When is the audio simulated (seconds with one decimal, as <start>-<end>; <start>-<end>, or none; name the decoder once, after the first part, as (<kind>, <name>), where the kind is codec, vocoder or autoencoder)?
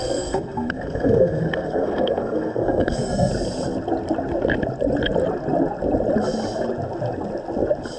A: 0.0-3.3 (codec, SNAC)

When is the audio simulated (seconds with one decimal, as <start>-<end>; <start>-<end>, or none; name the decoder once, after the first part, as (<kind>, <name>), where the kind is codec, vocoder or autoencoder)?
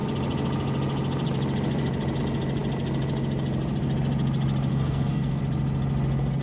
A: 4.7-5.4 (codec, SNAC)